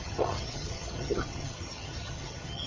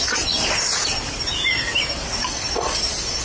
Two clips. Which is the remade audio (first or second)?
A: first